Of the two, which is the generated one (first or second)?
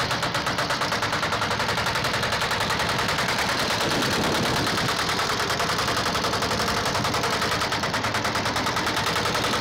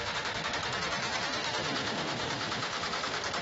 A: second